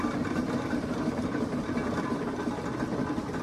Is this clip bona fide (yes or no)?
yes